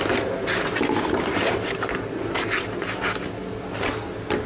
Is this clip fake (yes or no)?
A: no